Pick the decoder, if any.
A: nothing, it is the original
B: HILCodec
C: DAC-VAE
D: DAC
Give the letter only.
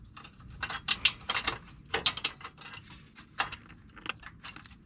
A